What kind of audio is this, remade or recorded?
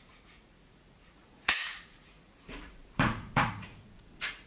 remade